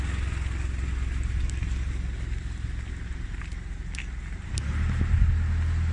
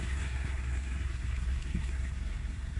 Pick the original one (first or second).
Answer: first